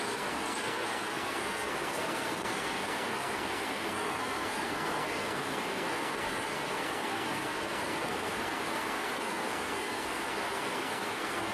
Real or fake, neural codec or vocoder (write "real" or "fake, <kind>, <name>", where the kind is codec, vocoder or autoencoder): fake, codec, SNAC